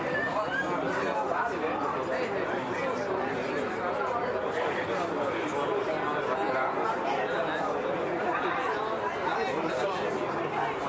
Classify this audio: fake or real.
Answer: real